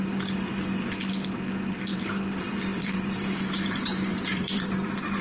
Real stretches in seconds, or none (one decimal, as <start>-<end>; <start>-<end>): 0.0-1.9